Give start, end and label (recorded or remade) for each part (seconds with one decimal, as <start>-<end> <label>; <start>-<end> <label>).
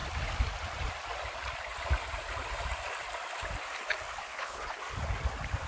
0.0-4.2 recorded; 4.2-4.8 remade; 4.8-5.7 recorded